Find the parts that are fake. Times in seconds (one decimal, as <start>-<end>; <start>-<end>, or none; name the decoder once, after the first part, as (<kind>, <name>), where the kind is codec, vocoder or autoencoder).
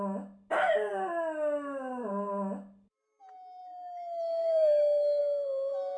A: none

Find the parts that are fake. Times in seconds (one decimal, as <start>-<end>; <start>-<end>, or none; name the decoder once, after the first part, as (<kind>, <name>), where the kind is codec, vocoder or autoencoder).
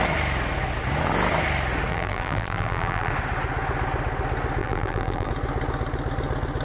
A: 1.9-3.1 (vocoder, BigVGAN v2); 4.6-5.3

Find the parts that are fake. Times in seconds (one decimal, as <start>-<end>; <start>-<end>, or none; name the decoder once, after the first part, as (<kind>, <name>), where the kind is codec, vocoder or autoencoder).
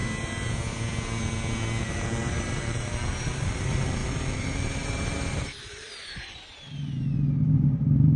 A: 1.8-8.2 (vocoder, BigVGAN v2)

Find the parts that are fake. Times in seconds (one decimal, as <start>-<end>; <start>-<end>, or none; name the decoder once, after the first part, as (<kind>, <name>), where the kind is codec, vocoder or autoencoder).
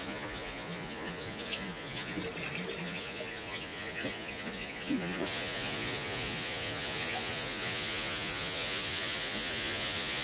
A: 0.0-2.2 (vocoder, Vocos); 2.8-10.2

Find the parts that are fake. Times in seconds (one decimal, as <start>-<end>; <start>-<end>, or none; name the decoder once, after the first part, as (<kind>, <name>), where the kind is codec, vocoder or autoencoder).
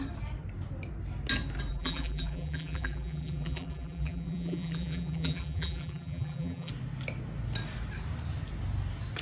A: 1.7-6.7 (vocoder, BigVGAN v2)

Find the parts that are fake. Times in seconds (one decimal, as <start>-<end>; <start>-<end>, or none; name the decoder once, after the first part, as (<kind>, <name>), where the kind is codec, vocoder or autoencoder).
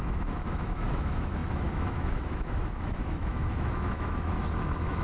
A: 0.0-5.0 (autoencoder, DAC-VAE)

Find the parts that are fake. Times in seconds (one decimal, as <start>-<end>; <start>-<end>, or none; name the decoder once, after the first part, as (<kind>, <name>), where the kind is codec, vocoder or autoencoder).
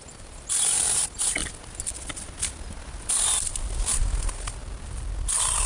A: 0.0-1.4 (vocoder, BigVGAN v2); 3.4-4.0; 4.5-5.7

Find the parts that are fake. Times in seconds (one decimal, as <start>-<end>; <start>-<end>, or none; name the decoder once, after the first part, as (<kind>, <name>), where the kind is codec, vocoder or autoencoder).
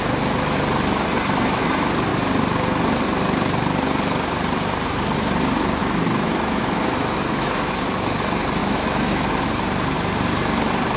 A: 5.8-7.7 (autoencoder, DAC-VAE); 8.6-9.3